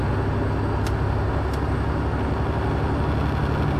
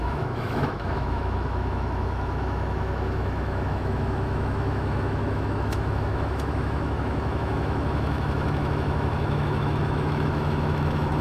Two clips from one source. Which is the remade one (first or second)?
second